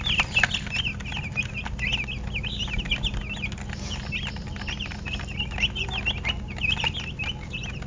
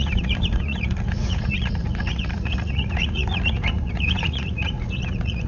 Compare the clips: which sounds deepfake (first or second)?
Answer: second